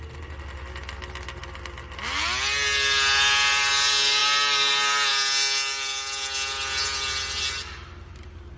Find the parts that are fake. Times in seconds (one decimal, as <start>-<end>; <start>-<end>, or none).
none